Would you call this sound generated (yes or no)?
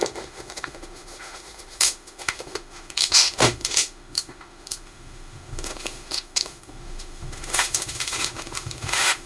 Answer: yes